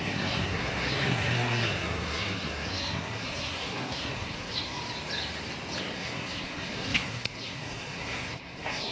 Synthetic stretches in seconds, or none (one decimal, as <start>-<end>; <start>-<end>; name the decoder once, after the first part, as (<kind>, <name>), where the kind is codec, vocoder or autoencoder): 0.0-4.8 (codec, SNAC); 5.8-8.9